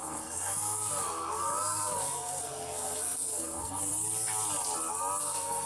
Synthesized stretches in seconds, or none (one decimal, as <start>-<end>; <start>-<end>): 0.0-3.9; 5.2-5.7

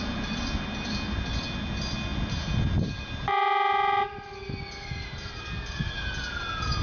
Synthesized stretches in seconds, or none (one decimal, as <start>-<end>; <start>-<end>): none

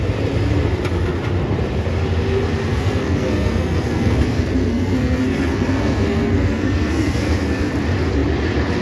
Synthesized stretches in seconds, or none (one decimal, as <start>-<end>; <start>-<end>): 2.7-7.7

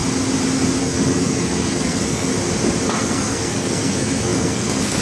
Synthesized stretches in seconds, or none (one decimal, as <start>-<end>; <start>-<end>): 0.8-2.3; 2.9-5.0

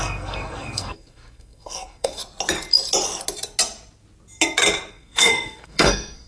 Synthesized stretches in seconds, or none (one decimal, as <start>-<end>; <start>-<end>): 0.0-2.2; 4.9-6.3

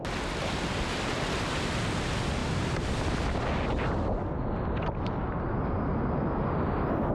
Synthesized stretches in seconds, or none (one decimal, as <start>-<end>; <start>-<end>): none